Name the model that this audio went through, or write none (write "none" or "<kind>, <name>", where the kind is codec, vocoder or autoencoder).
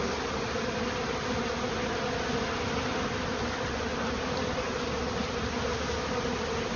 none